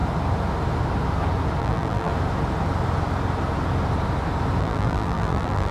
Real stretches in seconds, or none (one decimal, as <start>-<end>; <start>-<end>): 0.0-1.6; 2.1-4.6